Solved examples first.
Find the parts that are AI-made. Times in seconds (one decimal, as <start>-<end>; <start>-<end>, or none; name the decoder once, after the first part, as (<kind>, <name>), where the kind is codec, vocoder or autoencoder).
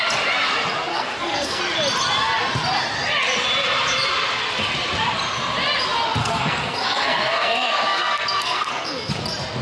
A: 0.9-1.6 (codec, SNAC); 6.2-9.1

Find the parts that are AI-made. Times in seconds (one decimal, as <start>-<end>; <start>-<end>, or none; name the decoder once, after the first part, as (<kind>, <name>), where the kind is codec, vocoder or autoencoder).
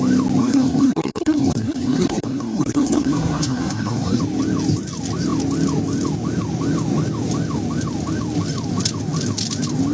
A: 0.4-4.2 (codec, SNAC)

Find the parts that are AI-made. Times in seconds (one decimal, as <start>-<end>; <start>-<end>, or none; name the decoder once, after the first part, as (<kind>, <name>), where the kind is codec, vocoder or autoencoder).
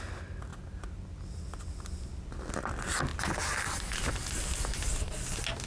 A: none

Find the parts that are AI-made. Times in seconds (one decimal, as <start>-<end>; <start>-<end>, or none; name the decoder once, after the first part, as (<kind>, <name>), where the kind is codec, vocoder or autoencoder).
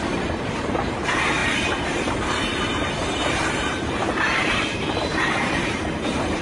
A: 0.0-6.4 (vocoder, BigVGAN v2)